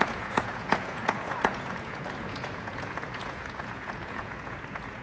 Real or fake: fake